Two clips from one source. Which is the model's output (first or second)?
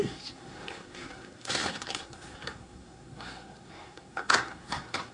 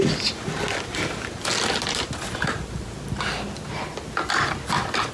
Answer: first